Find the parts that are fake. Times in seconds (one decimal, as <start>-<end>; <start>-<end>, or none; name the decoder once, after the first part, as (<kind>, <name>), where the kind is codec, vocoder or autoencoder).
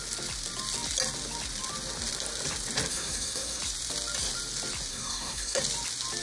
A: 2.9-3.6 (codec, SNAC); 4.9-5.6